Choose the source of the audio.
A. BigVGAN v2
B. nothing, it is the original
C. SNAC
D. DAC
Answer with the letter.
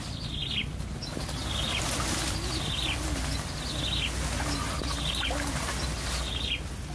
B